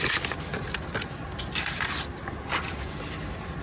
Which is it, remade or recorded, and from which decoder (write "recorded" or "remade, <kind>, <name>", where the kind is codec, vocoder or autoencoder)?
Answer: recorded